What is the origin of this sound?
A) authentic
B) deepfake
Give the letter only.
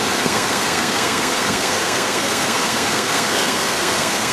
B